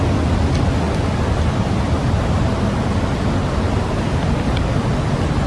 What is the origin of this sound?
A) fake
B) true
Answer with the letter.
B